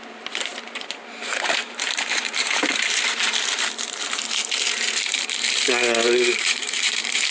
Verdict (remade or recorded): remade